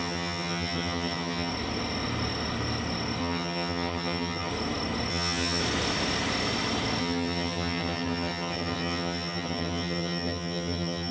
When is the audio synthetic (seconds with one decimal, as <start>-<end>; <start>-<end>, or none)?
0.0-1.5; 3.2-4.5; 5.1-5.6; 7.0-11.1